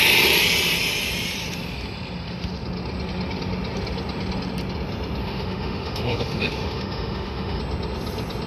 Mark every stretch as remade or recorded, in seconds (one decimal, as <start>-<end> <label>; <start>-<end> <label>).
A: 0.0-5.2 recorded; 5.2-7.6 remade; 7.6-8.5 recorded